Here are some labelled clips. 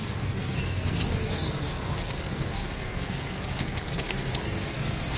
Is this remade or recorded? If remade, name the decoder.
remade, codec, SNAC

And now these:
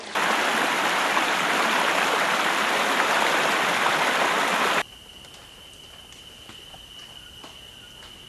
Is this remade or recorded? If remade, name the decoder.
recorded